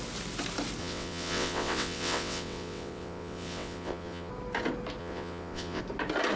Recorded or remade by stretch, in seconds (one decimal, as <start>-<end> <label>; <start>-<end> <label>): 0.0-0.8 recorded; 0.8-4.3 remade; 4.3-5.0 recorded; 5.0-5.8 remade; 5.8-6.4 recorded